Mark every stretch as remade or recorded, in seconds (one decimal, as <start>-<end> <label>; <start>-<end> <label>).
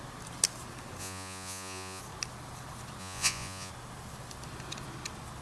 0.0-1.0 recorded; 1.0-2.0 remade; 2.0-3.0 recorded; 3.0-3.7 remade; 3.7-5.4 recorded